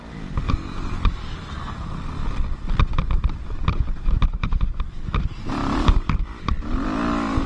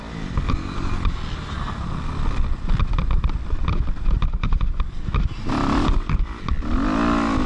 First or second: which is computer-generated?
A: first